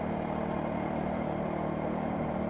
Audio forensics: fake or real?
real